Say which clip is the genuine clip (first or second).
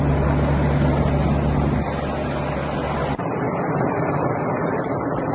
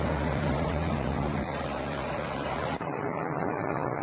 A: first